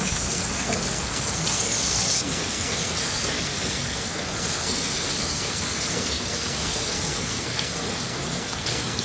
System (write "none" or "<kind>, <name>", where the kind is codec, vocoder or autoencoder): codec, SNAC